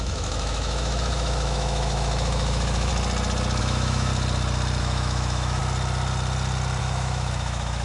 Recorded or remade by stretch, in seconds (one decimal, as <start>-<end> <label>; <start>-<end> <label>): 0.0-2.9 remade; 2.9-3.6 recorded; 3.6-4.1 remade; 4.1-4.8 recorded; 4.8-5.6 remade; 5.6-6.8 recorded; 6.8-7.8 remade